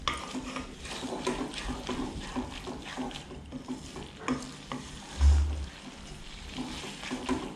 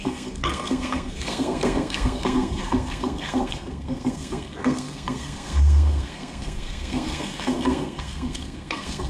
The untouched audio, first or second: first